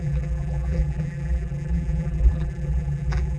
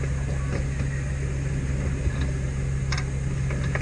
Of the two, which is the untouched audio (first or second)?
second